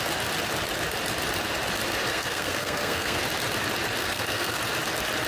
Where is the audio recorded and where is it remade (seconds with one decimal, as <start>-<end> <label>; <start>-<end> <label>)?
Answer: 0.0-2.1 recorded; 2.1-3.2 remade; 3.2-4.0 recorded; 4.0-4.6 remade; 4.6-5.3 recorded